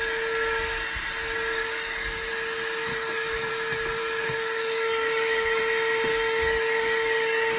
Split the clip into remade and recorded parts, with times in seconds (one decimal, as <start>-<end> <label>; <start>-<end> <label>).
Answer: 0.0-1.6 recorded; 1.6-2.3 remade; 2.3-2.9 recorded; 2.9-3.5 remade; 3.5-4.0 recorded; 4.0-5.6 remade; 5.6-6.1 recorded; 6.1-7.6 remade